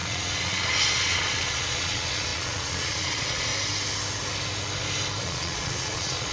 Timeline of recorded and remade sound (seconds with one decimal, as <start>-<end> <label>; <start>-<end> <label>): 0.0-3.5 remade; 3.5-5.2 recorded; 5.2-6.3 remade